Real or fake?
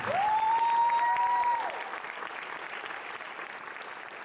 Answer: real